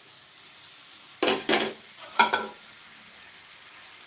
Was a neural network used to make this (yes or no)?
no